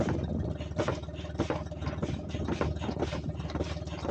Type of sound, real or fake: real